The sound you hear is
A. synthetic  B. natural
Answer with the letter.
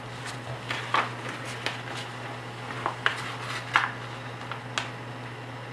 B